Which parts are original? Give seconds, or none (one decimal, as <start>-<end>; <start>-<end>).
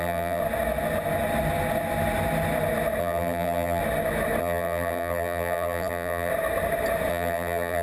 0.4-3.0; 3.8-4.4; 6.3-7.1